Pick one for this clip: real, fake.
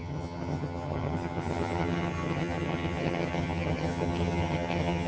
fake